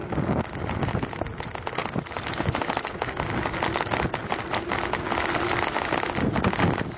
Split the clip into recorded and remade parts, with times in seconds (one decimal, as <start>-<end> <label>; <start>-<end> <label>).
0.0-7.0 recorded